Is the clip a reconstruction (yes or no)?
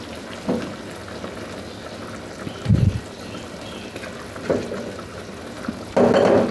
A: no